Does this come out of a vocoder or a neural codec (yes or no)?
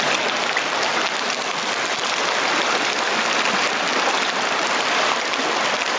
no